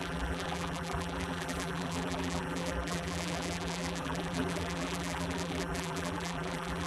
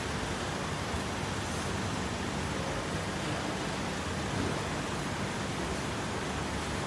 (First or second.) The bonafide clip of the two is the second